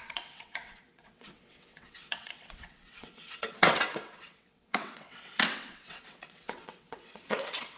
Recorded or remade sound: remade